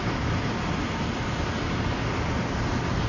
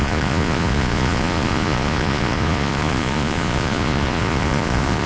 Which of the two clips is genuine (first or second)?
first